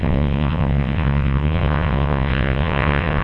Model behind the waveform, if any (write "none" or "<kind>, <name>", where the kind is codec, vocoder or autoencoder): vocoder, WaveNeXt